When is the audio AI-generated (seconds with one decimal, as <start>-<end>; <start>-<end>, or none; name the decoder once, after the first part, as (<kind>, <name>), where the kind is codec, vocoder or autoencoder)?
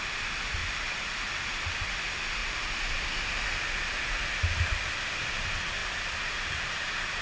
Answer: 0.6-1.3 (vocoder, BigVGAN v2); 2.4-3.1; 5.8-7.2